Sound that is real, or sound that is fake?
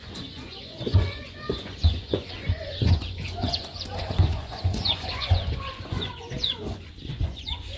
fake